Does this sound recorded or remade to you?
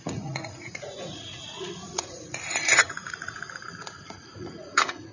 remade